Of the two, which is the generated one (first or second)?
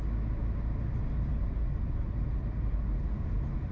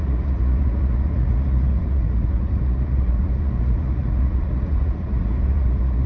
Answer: second